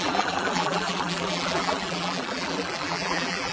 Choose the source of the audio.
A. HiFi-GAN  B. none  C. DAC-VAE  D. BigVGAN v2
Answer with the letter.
D